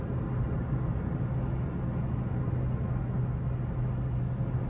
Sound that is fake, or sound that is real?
real